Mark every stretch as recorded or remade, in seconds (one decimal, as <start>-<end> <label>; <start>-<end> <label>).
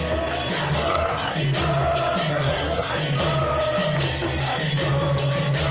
0.0-0.6 recorded; 0.6-1.4 remade; 1.4-2.3 recorded; 2.3-2.9 remade; 2.9-5.7 recorded